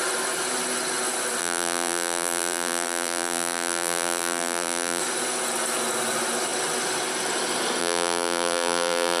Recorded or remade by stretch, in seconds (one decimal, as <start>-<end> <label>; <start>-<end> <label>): 0.0-1.4 recorded; 1.4-5.0 remade; 5.0-7.8 recorded; 7.8-9.2 remade